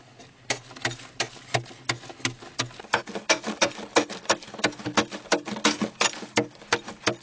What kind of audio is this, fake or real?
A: real